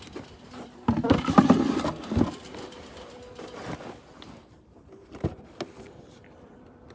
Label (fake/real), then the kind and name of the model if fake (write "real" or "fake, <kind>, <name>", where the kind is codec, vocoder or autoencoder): real